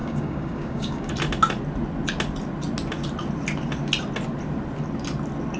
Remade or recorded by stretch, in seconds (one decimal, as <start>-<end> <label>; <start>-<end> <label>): 0.0-1.1 remade; 1.1-5.6 recorded